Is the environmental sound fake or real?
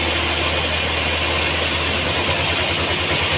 real